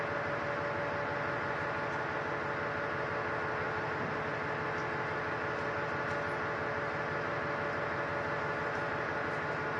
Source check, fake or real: real